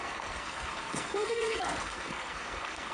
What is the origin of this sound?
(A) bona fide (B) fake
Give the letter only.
B